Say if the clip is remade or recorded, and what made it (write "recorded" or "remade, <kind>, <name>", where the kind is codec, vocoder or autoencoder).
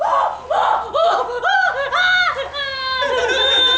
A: recorded